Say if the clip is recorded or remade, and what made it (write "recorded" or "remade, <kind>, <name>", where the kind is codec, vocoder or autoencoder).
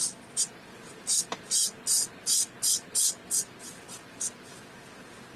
recorded